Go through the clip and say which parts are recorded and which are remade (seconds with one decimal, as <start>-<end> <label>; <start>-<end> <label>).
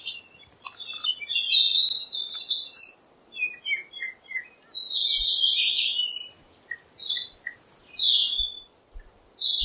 0.0-9.6 recorded